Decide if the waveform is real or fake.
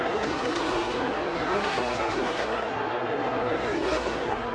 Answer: fake